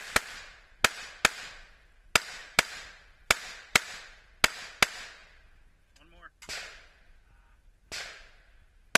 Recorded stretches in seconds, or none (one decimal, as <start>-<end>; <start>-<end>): 0.0-2.4; 4.2-9.0